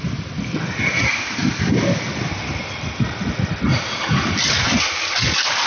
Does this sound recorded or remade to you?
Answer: recorded